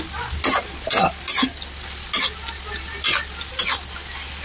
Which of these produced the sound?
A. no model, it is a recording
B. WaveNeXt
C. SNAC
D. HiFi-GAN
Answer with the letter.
A